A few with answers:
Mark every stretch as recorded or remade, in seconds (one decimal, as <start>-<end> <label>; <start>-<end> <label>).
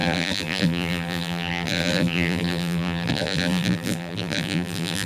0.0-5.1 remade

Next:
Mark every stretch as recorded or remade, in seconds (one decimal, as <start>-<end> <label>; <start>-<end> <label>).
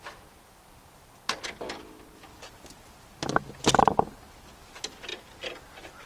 0.0-5.1 recorded; 5.1-5.6 remade; 5.6-6.1 recorded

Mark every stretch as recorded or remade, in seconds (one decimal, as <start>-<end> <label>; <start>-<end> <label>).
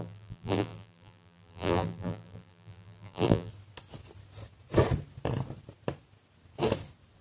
0.0-3.5 remade; 3.5-7.2 recorded